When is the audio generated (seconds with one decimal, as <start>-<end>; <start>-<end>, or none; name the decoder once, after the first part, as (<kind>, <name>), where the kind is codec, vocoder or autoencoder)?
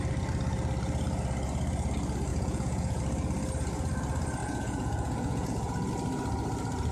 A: 2.3-3.0 (vocoder, Vocos); 4.4-5.9